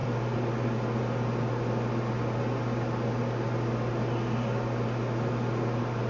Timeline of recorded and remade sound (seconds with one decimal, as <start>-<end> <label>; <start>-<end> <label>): 0.0-6.1 recorded